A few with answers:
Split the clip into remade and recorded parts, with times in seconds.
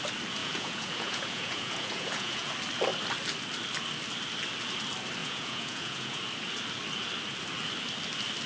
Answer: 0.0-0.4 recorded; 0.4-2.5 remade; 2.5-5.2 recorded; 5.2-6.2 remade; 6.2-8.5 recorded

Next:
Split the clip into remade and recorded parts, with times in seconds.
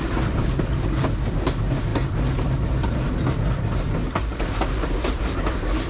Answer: 0.0-5.9 recorded